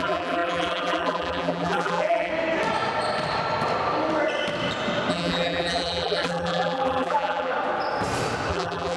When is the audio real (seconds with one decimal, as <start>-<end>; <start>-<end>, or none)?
2.3-5.1; 7.5-8.5

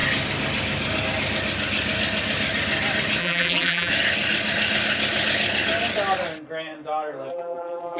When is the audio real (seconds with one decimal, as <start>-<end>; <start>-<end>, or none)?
0.0-3.2; 3.9-7.3

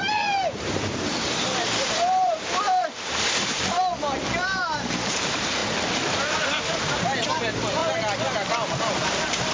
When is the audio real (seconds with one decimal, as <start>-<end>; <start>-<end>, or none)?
3.8-4.3; 5.6-6.2; 7.8-8.8

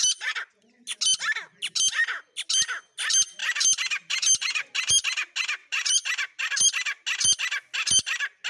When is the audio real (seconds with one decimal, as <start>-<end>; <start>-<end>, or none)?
0.0-3.4; 4.9-5.6; 6.4-8.5

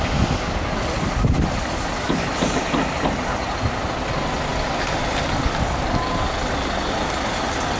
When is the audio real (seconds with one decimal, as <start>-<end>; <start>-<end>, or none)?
0.0-4.5; 5.2-7.8

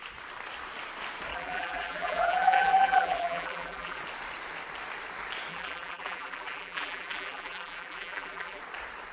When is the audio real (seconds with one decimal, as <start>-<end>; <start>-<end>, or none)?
0.0-1.3; 4.0-5.5; 8.6-9.1

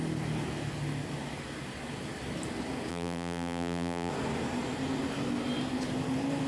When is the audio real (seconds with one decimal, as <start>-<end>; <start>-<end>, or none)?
0.0-2.9; 4.1-6.5

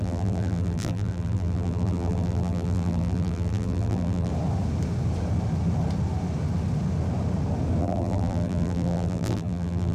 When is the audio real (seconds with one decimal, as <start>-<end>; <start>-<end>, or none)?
4.3-7.8